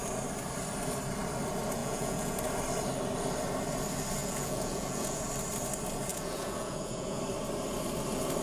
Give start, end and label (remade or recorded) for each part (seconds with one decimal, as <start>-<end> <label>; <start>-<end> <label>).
0.0-1.8 recorded; 1.8-2.4 remade; 2.4-4.2 recorded; 4.2-5.2 remade; 5.2-6.1 recorded; 6.1-7.2 remade; 7.2-8.4 recorded